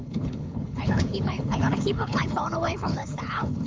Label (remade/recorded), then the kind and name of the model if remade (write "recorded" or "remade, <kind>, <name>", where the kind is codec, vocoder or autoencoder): remade, codec, HILCodec